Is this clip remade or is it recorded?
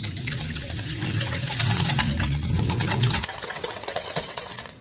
remade